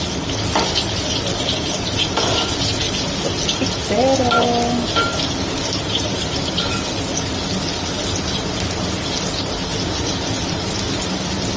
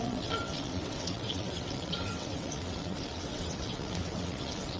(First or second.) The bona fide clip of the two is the first